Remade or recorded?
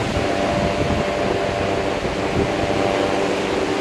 recorded